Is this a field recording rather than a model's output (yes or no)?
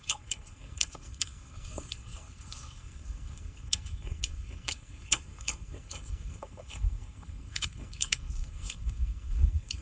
no